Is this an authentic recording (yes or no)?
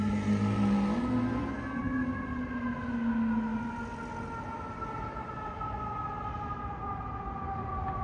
yes